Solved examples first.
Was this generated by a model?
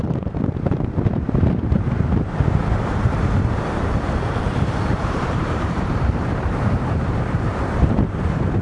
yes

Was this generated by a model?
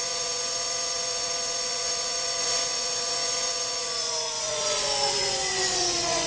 yes